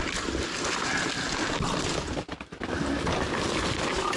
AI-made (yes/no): no